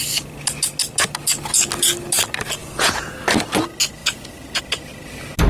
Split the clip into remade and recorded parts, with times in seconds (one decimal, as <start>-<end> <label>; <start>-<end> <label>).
0.0-2.6 recorded; 2.6-3.2 remade; 3.2-4.0 recorded; 4.0-4.6 remade; 4.6-5.5 recorded